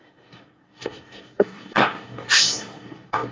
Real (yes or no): no